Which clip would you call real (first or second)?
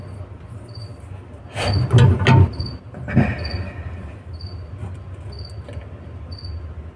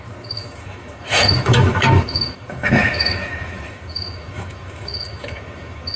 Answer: first